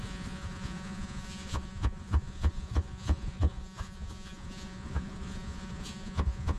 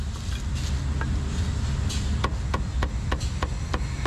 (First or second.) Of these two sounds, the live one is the second